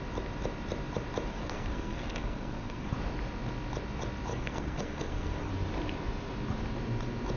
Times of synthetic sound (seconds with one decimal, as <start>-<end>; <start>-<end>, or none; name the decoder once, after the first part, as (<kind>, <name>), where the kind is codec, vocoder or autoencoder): 1.3-2.9 (codec, SNAC); 4.3-5.5

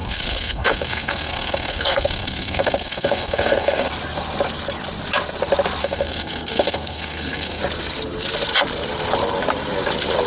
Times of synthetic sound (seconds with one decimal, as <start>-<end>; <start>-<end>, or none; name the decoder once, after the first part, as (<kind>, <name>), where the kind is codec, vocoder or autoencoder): 0.0-3.9 (codec, SNAC); 5.8-7.6

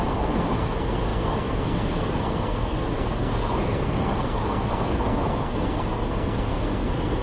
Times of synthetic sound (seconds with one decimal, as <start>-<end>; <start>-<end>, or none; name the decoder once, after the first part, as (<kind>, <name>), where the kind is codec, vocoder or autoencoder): 0.0-7.2 (codec, SNAC)